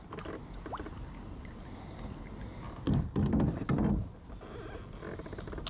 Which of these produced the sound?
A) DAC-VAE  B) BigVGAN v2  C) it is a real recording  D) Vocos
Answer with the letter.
C